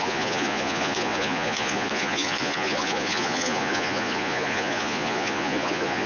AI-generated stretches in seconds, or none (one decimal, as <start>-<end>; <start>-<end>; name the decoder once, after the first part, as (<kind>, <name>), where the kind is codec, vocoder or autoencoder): 0.0-6.1 (vocoder, Vocos)